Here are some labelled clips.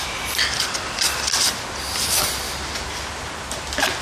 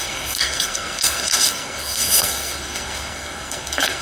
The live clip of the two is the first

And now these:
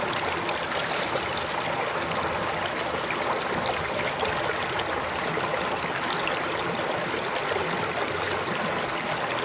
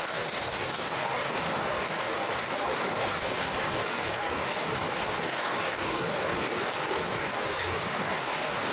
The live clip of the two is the first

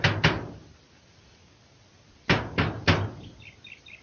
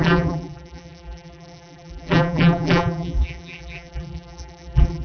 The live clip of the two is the first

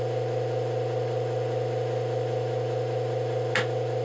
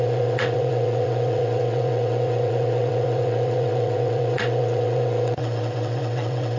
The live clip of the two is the first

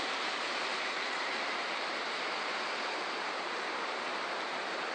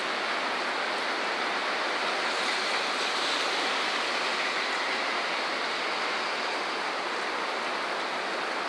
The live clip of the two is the second